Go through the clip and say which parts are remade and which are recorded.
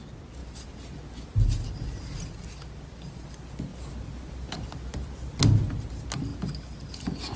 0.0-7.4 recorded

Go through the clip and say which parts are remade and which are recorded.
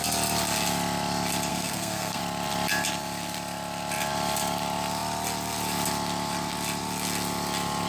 0.0-1.5 recorded; 1.5-2.2 remade; 2.2-7.9 recorded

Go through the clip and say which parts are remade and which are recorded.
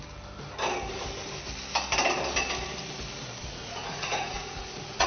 0.0-3.6 recorded; 3.6-5.1 remade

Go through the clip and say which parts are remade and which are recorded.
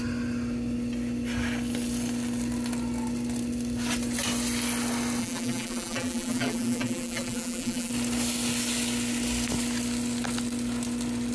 0.0-5.2 recorded; 5.2-7.9 remade; 7.9-11.3 recorded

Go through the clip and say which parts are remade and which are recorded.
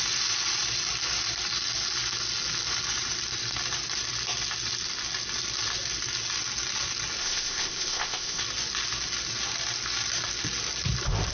0.0-7.2 recorded; 7.2-8.4 remade; 8.4-11.3 recorded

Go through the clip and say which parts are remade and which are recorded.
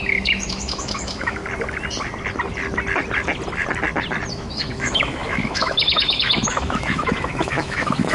0.0-1.4 remade; 1.4-4.3 recorded; 4.3-8.1 remade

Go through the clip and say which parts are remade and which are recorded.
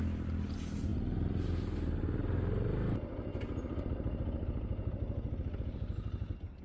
0.0-6.6 recorded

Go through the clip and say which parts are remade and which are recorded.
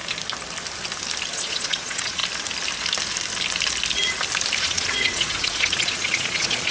0.0-1.3 recorded; 1.3-2.2 remade; 2.2-4.6 recorded; 4.6-6.7 remade